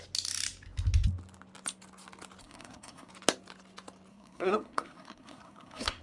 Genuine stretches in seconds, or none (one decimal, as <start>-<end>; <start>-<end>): 0.0-2.4; 3.1-4.1